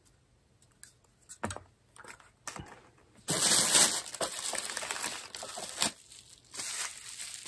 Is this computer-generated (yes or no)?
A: no